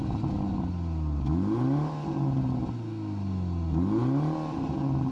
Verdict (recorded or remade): recorded